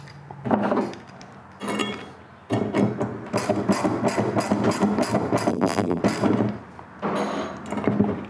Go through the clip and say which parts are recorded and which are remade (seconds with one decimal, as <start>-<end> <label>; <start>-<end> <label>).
0.0-5.5 recorded; 5.5-6.0 remade; 6.0-8.3 recorded

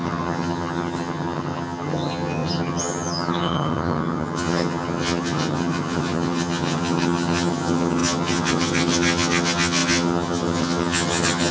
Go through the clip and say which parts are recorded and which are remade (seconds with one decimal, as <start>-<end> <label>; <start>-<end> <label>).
0.0-11.5 remade

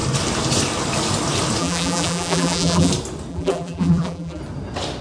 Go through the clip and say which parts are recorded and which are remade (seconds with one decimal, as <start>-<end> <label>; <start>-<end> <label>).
0.0-1.6 recorded; 1.6-2.9 remade; 2.9-3.3 recorded; 3.3-4.4 remade; 4.4-5.0 recorded

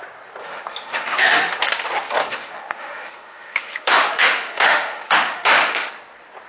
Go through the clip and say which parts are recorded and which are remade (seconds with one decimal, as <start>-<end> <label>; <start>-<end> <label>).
0.0-0.4 recorded; 0.4-1.5 remade; 1.5-2.2 recorded; 2.2-5.9 remade; 5.9-6.5 recorded

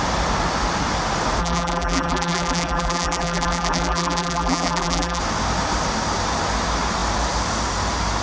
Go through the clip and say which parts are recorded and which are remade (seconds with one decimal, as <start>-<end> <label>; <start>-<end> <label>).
0.0-1.4 recorded; 1.4-5.2 remade; 5.2-8.2 recorded

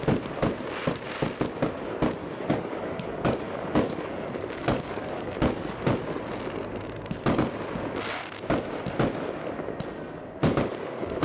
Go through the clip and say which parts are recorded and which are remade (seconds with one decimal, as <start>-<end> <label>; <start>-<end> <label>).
0.0-2.2 recorded; 2.2-5.8 remade; 5.8-10.4 recorded; 10.4-11.2 remade